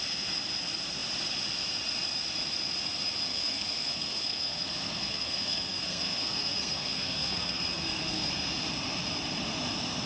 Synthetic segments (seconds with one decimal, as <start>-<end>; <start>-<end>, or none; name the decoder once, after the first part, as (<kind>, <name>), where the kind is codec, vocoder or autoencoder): 3.3-8.3 (codec, SNAC)